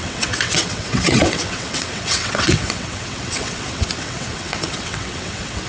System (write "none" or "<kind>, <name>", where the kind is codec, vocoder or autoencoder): vocoder, WaveNeXt